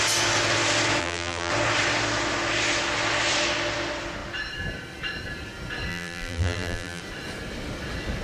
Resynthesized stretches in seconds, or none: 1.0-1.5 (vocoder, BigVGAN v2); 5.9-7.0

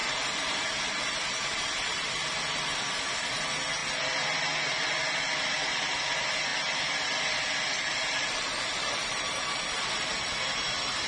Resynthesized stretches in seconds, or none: 0.0-0.6 (vocoder, BigVGAN v2); 8.5-9.5

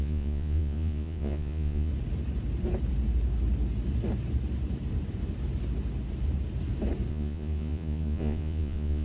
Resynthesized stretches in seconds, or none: 0.0-1.9 (vocoder, Vocos); 7.1-9.0